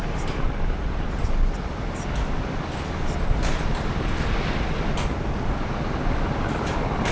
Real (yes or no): yes